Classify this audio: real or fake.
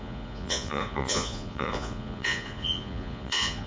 fake